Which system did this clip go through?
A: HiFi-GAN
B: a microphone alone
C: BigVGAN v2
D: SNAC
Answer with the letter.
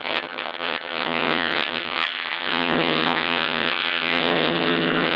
A